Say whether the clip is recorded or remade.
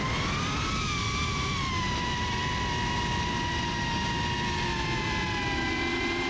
recorded